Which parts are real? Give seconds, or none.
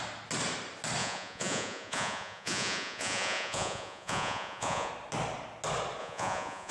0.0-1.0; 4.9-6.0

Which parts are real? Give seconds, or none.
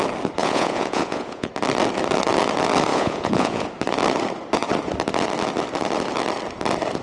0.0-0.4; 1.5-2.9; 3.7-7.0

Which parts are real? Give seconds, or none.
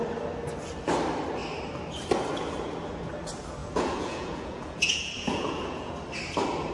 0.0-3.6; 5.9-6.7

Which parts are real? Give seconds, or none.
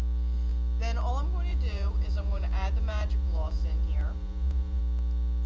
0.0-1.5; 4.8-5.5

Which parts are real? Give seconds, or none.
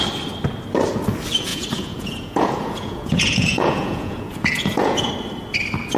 0.0-1.5; 5.1-6.0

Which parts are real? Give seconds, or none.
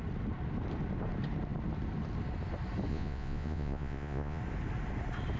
0.0-2.9; 4.4-5.4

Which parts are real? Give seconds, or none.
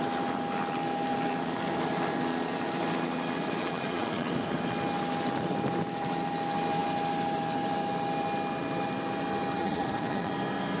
0.0-3.6; 4.3-9.6; 10.3-10.8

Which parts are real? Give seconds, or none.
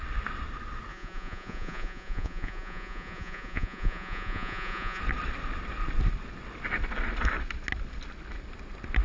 0.0-0.9; 5.0-9.0